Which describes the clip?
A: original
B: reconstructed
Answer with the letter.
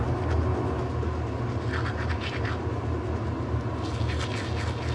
A